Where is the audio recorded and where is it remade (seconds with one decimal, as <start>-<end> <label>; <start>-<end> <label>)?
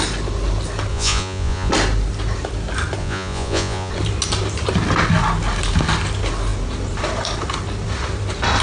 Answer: 0.0-0.9 recorded; 0.9-1.7 remade; 1.7-3.0 recorded; 3.0-3.9 remade; 3.9-8.6 recorded